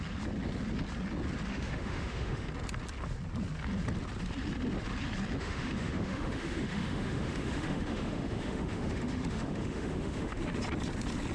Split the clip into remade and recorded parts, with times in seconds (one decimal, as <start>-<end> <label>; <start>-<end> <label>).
0.0-1.5 recorded; 1.5-2.5 remade; 2.5-5.4 recorded; 5.4-10.4 remade; 10.4-11.3 recorded